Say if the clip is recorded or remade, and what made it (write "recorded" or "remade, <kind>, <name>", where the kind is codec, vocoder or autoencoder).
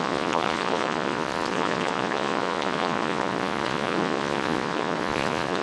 remade, vocoder, Vocos